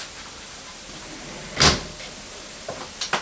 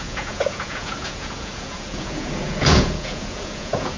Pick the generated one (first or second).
second